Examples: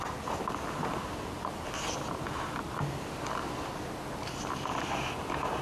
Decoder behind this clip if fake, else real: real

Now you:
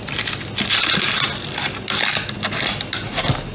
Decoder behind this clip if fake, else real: real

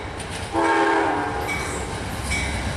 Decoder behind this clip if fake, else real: real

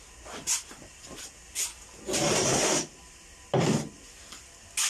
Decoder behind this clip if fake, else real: real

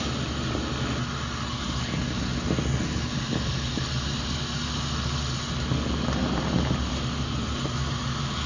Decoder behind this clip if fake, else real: real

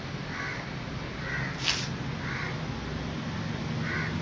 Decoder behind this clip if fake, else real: real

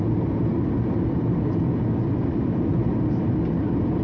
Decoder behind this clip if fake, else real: real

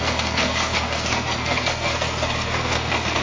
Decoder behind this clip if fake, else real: fake, codec, SNAC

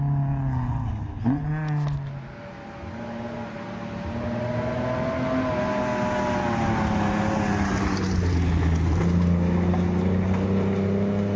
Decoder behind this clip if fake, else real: real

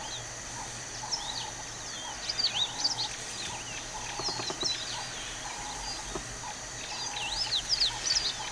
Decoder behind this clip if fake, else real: real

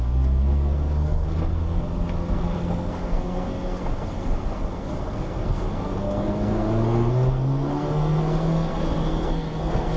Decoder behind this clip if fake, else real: fake, codec, SNAC